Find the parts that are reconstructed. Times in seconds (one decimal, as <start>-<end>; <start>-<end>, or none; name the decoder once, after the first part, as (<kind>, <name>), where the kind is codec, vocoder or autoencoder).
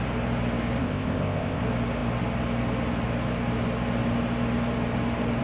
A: 0.8-1.6 (codec, ZipCodec)